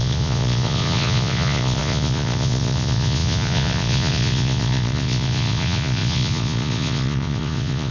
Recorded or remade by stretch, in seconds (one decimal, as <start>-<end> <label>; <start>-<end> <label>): 0.0-7.9 remade